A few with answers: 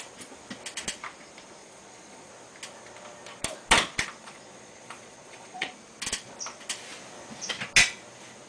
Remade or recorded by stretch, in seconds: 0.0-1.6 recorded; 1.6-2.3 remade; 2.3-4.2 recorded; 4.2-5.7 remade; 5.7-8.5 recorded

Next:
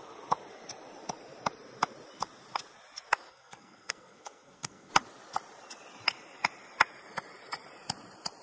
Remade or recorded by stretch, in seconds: 0.0-3.3 recorded; 3.3-4.9 remade; 4.9-8.4 recorded

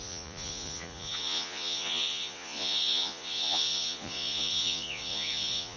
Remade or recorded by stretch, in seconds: 0.0-5.8 remade

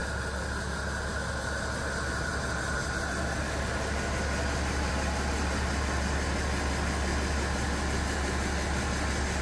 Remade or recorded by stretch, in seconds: 0.0-9.4 recorded

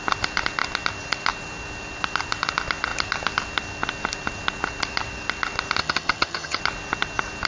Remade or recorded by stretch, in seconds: 0.0-5.8 recorded; 5.8-6.6 remade; 6.6-7.5 recorded